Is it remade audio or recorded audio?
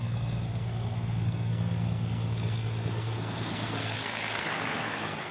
remade